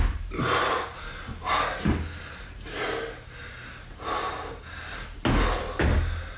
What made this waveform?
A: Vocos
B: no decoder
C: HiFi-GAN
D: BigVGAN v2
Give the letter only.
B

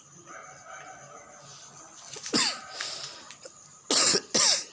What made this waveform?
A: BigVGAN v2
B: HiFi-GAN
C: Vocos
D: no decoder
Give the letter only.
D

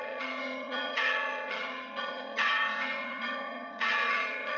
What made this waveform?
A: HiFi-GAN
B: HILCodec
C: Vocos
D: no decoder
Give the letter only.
A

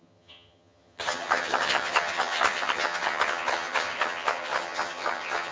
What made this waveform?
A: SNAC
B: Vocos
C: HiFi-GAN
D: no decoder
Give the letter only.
C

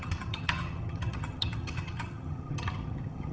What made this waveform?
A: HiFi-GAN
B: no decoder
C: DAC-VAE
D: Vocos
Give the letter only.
A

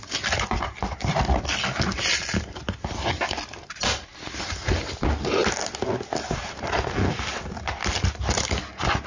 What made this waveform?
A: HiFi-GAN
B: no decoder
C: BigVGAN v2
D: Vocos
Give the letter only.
B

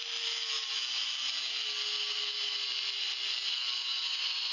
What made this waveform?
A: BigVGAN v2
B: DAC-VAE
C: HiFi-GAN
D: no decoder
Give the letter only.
D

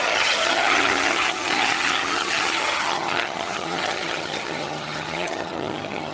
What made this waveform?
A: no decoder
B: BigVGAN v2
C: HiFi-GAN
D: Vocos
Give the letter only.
C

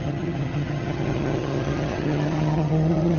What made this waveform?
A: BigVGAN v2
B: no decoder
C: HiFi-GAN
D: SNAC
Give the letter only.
C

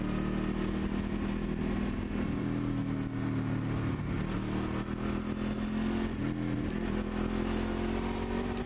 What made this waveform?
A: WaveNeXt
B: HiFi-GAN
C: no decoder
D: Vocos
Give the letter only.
C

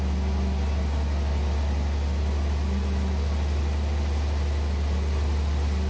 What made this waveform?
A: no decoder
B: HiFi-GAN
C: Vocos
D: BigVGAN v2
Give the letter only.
A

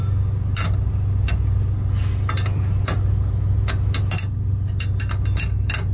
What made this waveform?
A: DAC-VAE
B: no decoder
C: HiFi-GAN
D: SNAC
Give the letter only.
B